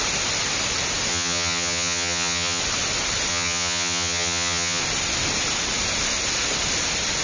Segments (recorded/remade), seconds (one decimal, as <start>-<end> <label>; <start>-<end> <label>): 0.0-1.1 recorded; 1.1-2.6 remade; 2.6-3.3 recorded; 3.3-4.8 remade; 4.8-7.2 recorded